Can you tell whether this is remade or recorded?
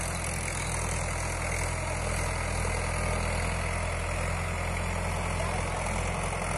recorded